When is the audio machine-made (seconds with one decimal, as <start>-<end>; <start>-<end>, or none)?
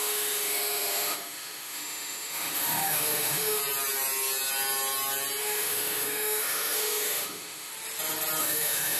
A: 0.0-3.6; 5.4-7.7; 8.4-9.0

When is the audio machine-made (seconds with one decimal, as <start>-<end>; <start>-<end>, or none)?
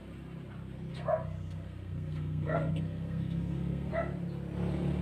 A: 0.9-3.9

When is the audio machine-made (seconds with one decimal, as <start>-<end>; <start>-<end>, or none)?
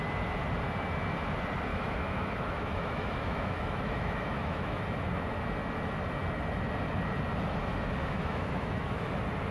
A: 1.7-4.8; 8.0-9.1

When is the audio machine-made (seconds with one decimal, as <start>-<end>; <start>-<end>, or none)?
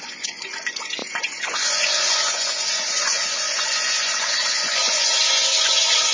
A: 0.0-6.1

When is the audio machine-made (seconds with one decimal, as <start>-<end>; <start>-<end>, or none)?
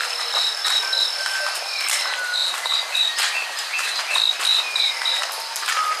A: 0.4-1.6; 2.4-4.0; 4.5-5.2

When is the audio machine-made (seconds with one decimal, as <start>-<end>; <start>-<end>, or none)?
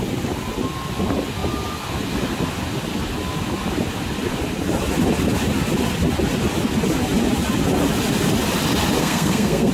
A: 9.0-9.7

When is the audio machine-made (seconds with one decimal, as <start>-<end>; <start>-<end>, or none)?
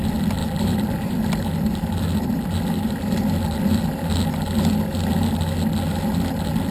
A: 0.4-3.9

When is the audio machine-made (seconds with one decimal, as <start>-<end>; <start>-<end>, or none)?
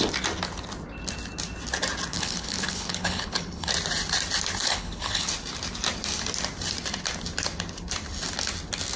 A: 2.1-3.7; 4.6-5.3